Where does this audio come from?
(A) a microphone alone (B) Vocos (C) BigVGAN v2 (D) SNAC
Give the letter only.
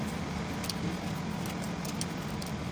A